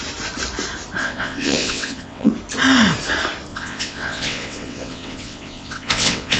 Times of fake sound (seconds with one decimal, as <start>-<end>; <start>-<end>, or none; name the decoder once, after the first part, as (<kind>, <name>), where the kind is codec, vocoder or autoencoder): 1.0-2.3 (vocoder, WaveNeXt); 3.5-6.4